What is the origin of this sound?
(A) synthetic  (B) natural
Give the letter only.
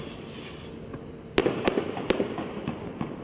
B